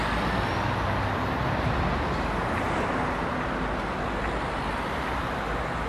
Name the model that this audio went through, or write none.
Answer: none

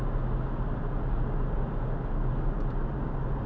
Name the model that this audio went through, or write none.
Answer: none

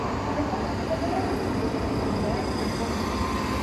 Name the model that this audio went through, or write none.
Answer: none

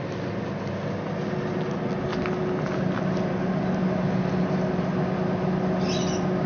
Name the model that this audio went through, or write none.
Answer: none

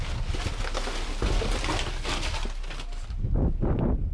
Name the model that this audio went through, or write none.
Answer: none